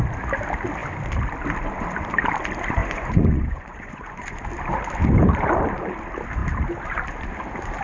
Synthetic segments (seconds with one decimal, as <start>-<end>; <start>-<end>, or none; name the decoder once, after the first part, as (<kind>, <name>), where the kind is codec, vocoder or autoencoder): 2.8-4.4 (vocoder, Vocos)